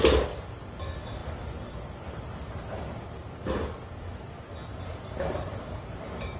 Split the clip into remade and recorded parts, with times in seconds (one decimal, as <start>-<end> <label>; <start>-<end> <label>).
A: 0.0-6.4 recorded